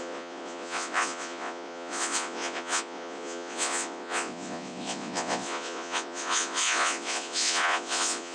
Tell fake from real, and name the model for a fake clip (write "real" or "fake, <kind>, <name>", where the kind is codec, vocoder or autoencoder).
fake, vocoder, Vocos